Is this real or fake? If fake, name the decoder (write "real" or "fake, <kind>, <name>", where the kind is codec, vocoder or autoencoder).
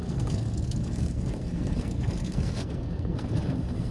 fake, codec, SNAC